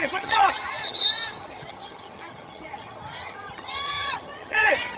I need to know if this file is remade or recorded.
remade